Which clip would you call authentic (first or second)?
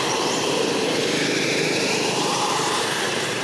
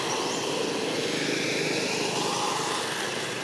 second